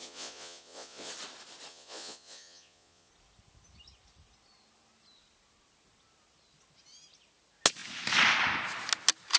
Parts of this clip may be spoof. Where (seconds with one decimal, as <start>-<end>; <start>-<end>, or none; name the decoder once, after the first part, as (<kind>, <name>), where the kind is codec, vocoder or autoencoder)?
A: 0.0-1.1 (vocoder, Vocos); 1.7-3.1